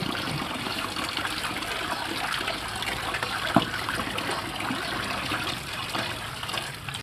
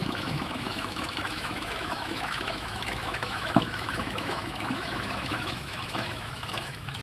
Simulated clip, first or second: second